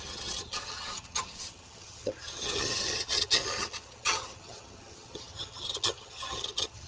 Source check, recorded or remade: remade